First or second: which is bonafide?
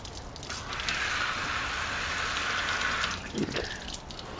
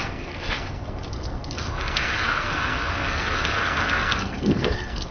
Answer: first